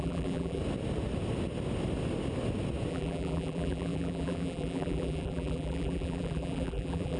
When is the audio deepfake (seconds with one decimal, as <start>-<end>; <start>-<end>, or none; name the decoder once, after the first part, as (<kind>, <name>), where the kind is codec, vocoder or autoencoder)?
0.0-0.6 (vocoder, BigVGAN v2); 2.9-7.2